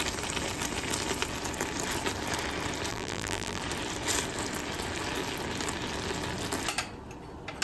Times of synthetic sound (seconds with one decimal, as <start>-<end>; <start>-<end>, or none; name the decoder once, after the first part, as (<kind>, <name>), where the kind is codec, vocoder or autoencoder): 2.9-3.6 (vocoder, BigVGAN v2)